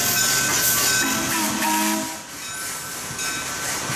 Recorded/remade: recorded